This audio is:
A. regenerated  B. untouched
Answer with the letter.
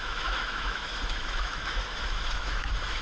A